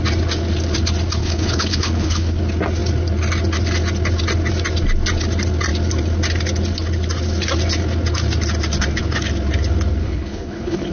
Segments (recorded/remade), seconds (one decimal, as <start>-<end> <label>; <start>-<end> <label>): 0.0-1.2 recorded; 1.2-2.4 remade; 2.4-10.0 recorded; 10.0-10.9 remade